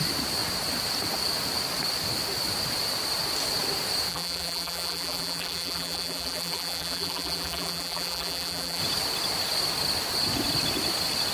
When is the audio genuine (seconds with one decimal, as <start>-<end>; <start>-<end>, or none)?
0.0-4.1; 8.8-11.3